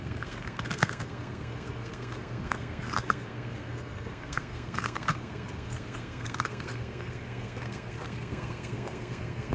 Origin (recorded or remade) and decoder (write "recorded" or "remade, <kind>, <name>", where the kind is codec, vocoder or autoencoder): remade, codec, SNAC